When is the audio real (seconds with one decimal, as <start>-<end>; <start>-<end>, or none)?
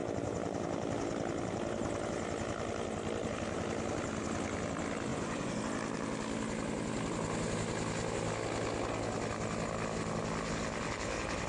0.0-5.1; 5.6-11.5